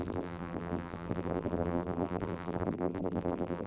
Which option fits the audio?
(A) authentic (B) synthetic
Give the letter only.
B